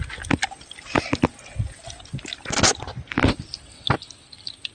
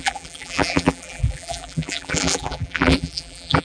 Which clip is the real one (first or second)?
first